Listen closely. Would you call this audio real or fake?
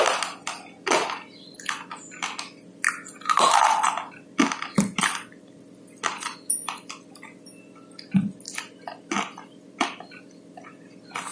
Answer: real